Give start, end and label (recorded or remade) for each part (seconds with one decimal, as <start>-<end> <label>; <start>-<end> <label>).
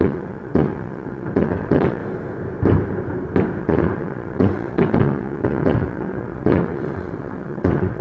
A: 0.0-2.0 remade; 2.0-3.6 recorded; 3.6-8.0 remade